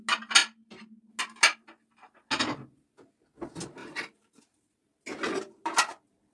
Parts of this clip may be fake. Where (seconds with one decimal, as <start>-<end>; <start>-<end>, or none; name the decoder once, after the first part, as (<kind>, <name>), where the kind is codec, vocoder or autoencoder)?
3.8-4.4 (vocoder, BigVGAN v2)